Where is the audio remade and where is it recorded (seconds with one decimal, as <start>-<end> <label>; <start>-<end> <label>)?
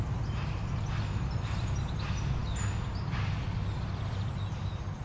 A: 0.0-5.0 recorded